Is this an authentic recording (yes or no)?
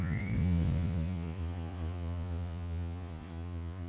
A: no